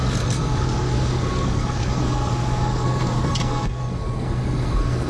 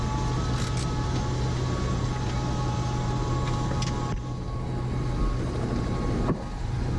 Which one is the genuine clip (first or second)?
second